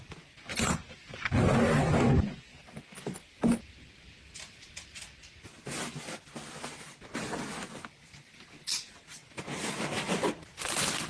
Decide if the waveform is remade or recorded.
recorded